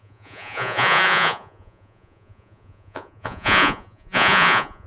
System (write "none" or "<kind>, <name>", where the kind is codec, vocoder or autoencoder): vocoder, Vocos